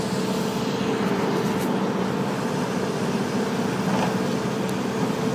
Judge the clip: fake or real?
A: real